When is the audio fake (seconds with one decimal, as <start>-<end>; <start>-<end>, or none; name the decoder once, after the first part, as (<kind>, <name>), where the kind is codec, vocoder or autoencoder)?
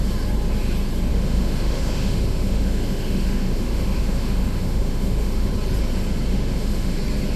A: 1.1-5.5 (autoencoder, DAC-VAE); 6.3-7.0